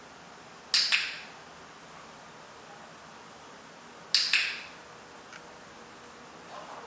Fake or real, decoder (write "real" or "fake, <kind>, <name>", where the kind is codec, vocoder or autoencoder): real